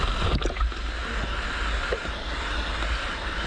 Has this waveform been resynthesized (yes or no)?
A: no